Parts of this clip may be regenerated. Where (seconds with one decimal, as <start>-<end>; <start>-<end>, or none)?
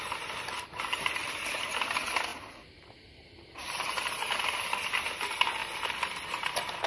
none